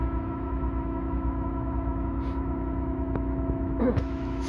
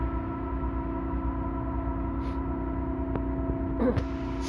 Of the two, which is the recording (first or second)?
second